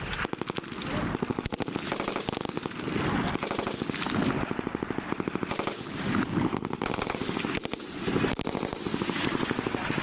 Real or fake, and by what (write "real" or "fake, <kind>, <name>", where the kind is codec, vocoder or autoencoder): real